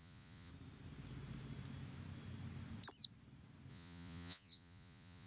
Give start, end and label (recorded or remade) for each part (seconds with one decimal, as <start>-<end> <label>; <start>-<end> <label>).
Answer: 0.0-0.5 remade; 0.5-3.7 recorded; 3.7-5.3 remade